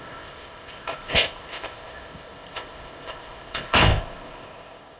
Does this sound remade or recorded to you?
remade